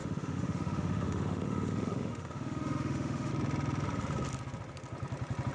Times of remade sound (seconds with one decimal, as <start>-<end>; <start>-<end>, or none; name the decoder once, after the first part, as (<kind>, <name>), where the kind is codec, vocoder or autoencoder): 0.0-3.3 (autoencoder, DAC-VAE)